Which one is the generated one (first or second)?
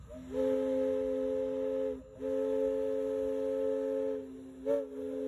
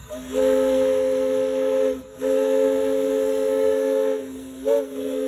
second